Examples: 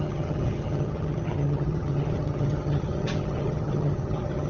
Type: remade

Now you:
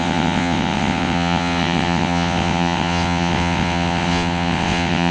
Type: remade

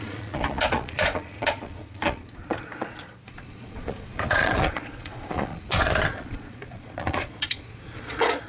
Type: remade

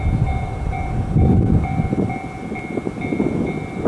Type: recorded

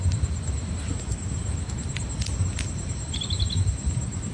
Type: recorded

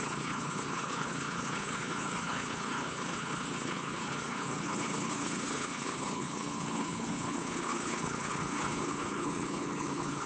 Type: remade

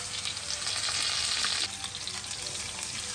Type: recorded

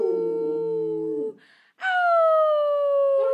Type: recorded